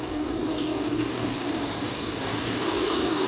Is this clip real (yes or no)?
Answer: no